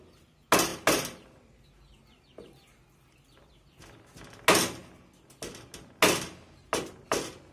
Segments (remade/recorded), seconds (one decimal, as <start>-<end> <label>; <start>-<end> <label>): 0.0-7.5 recorded